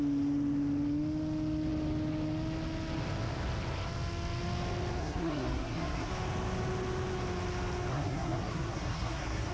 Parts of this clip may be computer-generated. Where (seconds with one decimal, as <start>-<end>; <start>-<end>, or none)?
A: 5.0-6.1; 7.9-9.5